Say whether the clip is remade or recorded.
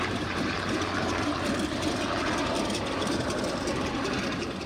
remade